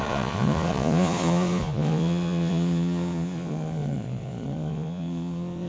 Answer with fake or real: fake